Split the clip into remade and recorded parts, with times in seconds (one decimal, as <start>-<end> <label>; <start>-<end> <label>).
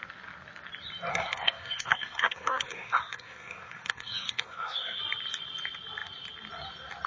0.0-1.1 recorded; 1.1-5.0 remade; 5.0-7.1 recorded